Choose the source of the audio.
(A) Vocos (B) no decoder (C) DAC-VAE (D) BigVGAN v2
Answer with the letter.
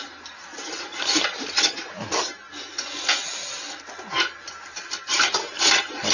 B